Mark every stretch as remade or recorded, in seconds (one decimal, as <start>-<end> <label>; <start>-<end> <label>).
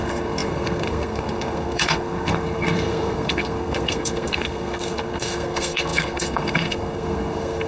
0.0-7.7 remade